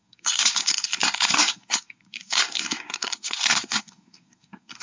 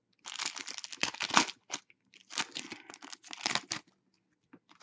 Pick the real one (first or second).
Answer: second